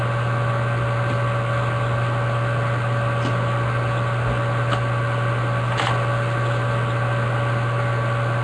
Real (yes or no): yes